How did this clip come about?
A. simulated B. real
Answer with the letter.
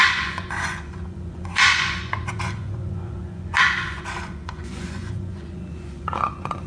A